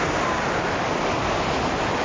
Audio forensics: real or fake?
real